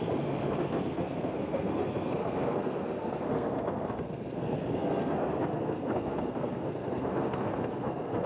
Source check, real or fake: fake